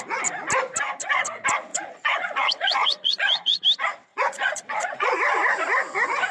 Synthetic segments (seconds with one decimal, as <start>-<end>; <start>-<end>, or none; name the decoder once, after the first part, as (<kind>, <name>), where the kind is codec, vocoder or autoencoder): 1.7-3.6 (vocoder, Vocos); 4.1-5.1